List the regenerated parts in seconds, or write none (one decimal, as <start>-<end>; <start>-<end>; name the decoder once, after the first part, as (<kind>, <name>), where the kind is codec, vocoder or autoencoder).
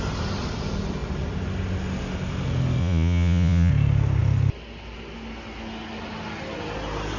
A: 2.8-3.7 (vocoder, Vocos)